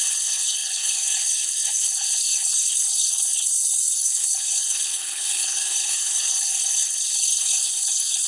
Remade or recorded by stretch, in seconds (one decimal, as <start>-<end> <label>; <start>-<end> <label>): 0.0-8.3 remade